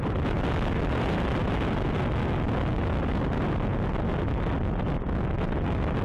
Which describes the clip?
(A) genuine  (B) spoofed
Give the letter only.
A